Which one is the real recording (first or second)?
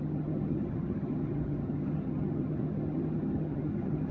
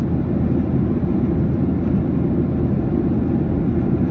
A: second